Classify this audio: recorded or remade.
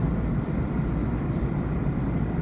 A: recorded